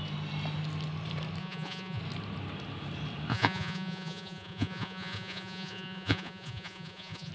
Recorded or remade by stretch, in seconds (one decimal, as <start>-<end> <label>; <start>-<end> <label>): 0.0-1.4 recorded; 1.4-2.0 remade; 2.0-3.3 recorded; 3.3-7.3 remade